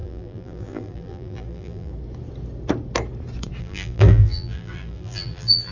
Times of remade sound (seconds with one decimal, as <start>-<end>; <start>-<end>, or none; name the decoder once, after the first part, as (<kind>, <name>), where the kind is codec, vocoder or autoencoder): 0.0-1.9 (vocoder, BigVGAN v2); 3.6-5.7